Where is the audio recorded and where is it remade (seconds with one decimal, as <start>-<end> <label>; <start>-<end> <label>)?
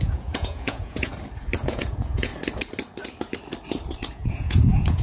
0.0-1.1 remade; 1.1-1.6 recorded; 1.6-2.3 remade; 2.3-4.1 recorded; 4.1-5.0 remade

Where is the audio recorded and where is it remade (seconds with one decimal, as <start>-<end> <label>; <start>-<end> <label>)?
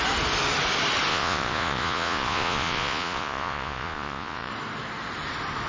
0.0-1.1 recorded; 1.1-4.5 remade; 4.5-5.7 recorded